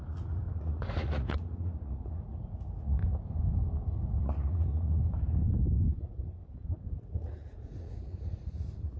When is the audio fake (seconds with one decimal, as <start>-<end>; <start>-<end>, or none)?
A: 0.0-3.0; 4.2-5.0; 5.9-6.4; 7.0-9.0